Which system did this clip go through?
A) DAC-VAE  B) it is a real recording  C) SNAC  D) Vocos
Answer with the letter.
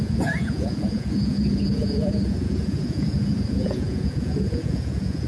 D